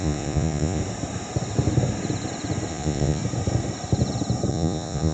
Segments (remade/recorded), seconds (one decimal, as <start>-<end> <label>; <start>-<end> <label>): 0.0-0.8 remade; 0.8-2.7 recorded; 2.7-3.2 remade; 3.2-4.5 recorded; 4.5-5.1 remade